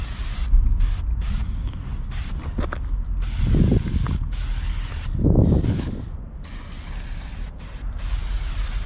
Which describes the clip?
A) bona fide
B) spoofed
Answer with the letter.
A